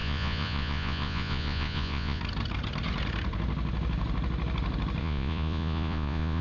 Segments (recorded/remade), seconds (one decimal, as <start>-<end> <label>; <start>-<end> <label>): 0.0-2.2 remade; 2.2-5.0 recorded; 5.0-6.4 remade